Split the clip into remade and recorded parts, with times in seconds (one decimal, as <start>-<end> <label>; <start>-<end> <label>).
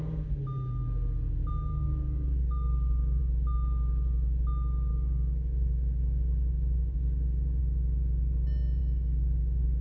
0.0-1.7 recorded; 1.7-3.2 remade; 3.2-4.9 recorded; 4.9-7.6 remade; 7.6-8.8 recorded; 8.8-9.8 remade